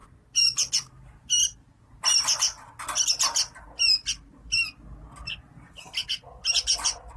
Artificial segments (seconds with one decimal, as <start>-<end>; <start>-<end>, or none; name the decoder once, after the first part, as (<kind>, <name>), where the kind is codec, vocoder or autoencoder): none